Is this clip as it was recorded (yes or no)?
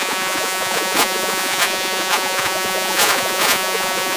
no